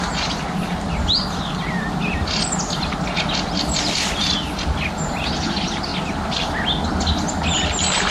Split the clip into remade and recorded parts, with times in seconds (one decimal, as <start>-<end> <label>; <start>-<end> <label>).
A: 0.0-8.1 recorded

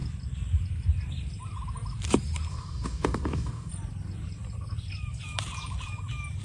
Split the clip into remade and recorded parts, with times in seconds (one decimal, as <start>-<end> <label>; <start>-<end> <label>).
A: 0.0-2.5 recorded; 2.5-3.7 remade; 3.7-6.4 recorded

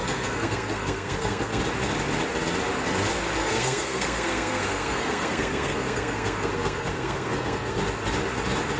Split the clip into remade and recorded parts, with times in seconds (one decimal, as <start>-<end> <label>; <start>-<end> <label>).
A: 0.0-1.6 remade; 1.6-3.4 recorded; 3.4-7.8 remade; 7.8-8.8 recorded

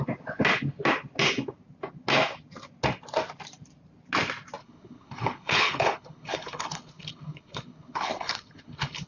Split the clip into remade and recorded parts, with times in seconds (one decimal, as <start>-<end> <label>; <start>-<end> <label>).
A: 0.0-4.6 recorded; 4.6-9.1 remade